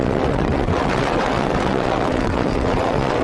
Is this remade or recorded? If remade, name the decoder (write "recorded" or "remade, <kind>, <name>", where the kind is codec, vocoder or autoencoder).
remade, vocoder, WaveNeXt